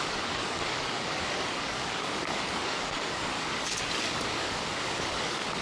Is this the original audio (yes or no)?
no